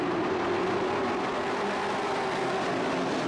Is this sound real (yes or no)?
yes